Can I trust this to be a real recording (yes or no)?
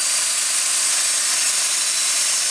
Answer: yes